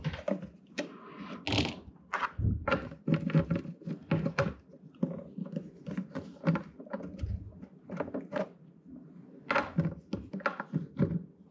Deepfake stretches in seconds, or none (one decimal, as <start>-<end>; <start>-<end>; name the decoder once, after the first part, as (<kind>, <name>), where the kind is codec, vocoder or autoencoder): none